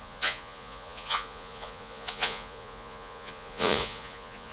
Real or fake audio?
fake